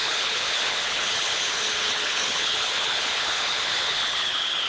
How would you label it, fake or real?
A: fake